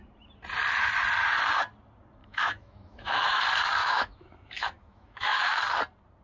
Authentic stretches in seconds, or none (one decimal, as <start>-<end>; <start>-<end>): 0.0-2.2; 3.4-3.8; 5.6-6.2